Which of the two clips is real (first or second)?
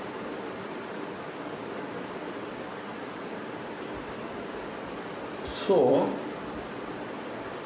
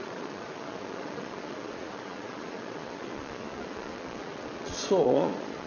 first